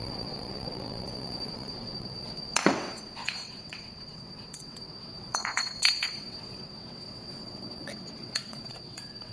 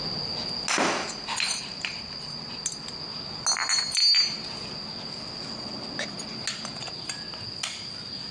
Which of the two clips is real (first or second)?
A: second